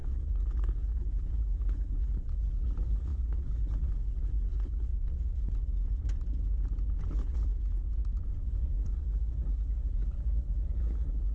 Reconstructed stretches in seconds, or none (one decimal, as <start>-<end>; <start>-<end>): 0.0-4.9; 7.1-7.5; 8.4-11.3